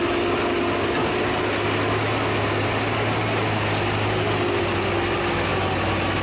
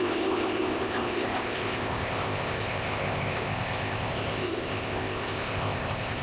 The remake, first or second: second